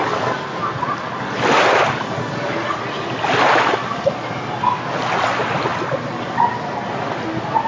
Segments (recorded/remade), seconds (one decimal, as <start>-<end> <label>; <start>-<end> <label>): 0.0-7.7 recorded